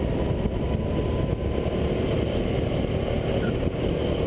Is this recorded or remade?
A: recorded